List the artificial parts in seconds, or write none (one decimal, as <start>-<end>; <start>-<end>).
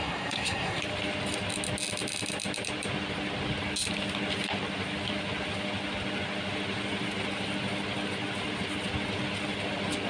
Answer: 0.0-0.8